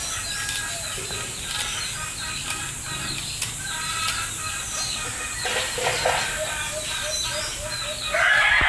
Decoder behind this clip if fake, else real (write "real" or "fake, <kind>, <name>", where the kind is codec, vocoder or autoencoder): real